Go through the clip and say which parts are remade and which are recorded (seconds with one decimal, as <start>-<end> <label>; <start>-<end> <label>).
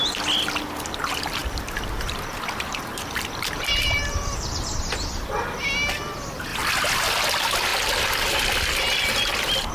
0.0-1.4 recorded; 1.4-4.8 remade; 4.8-9.7 recorded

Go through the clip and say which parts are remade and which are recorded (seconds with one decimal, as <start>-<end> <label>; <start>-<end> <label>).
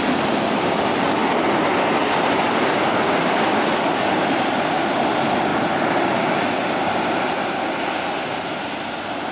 0.0-9.3 recorded